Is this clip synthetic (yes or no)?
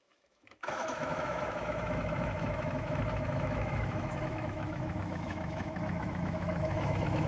yes